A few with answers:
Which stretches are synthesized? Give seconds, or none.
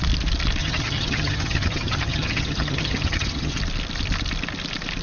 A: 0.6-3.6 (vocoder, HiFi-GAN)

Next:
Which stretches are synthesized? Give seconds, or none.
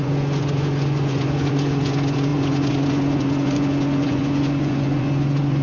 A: 0.0-5.6 (vocoder, Vocos)